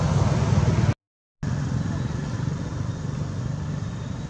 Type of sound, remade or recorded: recorded